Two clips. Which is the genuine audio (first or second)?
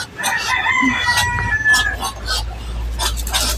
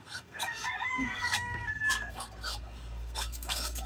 first